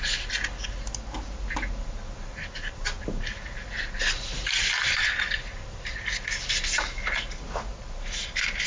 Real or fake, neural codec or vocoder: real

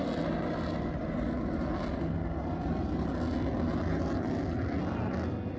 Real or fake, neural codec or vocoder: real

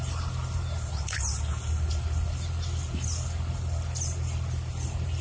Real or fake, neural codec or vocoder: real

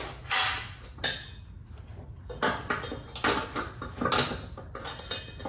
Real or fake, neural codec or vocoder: real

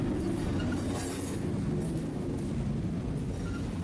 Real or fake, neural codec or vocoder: real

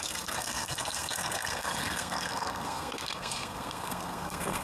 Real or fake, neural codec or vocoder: fake, codec, SNAC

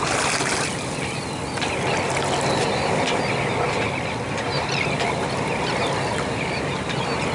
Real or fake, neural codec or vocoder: real